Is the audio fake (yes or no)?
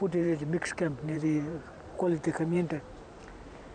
yes